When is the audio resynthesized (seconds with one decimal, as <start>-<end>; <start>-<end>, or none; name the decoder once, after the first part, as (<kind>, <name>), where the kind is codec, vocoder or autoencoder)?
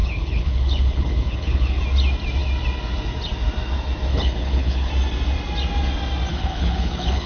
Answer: 0.0-1.8 (codec, HILCodec); 4.1-4.9; 6.3-7.3